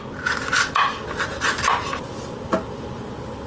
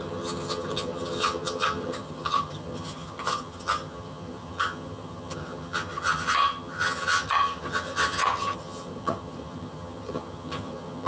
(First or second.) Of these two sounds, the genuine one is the first